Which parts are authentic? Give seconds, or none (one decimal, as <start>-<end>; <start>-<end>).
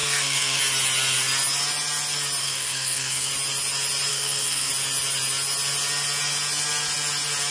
0.6-2.4; 3.3-4.1; 4.7-7.5